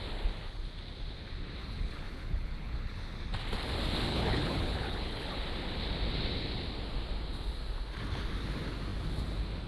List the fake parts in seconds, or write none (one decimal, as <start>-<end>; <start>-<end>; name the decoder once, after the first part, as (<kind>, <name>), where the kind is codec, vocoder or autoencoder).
1.6-3.2 (codec, HILCodec); 4.1-5.4